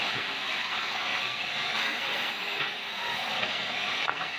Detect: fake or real fake